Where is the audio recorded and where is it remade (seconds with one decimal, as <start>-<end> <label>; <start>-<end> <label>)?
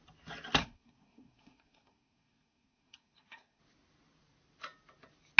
0.0-0.6 recorded; 0.6-3.6 remade; 3.6-5.4 recorded